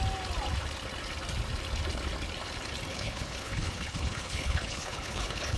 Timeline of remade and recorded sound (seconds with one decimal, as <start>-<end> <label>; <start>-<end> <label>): 0.0-2.9 recorded; 2.9-5.6 remade